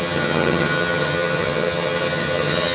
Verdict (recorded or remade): remade